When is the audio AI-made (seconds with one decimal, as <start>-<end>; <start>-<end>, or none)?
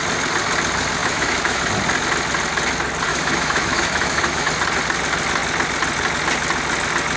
1.0-1.6; 3.1-4.5